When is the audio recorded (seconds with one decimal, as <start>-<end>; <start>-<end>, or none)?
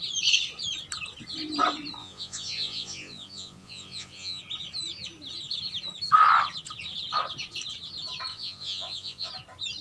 0.0-2.0; 4.4-8.3; 9.3-9.8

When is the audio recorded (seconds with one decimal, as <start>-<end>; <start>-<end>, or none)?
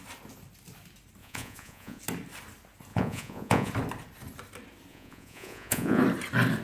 0.0-1.2; 2.0-2.9; 3.7-4.9; 6.0-6.6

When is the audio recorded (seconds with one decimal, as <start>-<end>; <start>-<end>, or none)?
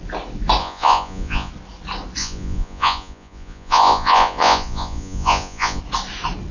0.0-0.6; 1.5-2.2; 5.8-6.5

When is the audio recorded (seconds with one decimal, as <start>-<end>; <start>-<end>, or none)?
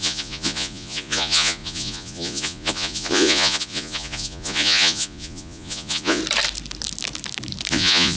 6.2-7.7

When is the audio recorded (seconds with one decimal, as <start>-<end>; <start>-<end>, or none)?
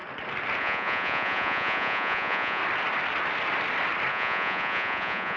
0.0-0.6; 2.6-4.1